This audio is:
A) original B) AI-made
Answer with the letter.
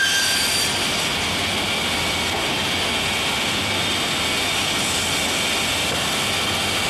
A